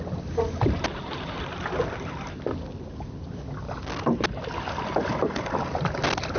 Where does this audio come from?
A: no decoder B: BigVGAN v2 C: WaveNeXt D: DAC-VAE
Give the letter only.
A